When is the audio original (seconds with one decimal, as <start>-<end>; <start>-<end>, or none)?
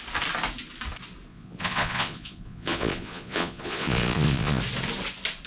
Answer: 0.0-1.3; 4.6-5.5